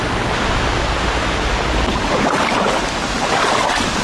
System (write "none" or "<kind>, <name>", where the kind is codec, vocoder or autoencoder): none